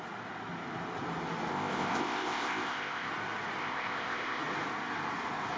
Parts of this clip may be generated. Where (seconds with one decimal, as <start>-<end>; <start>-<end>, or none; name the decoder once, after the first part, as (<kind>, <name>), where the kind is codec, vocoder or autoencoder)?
1.5-3.1 (codec, ZipCodec); 3.6-4.4